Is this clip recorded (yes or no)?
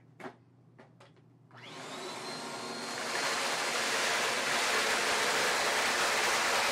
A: yes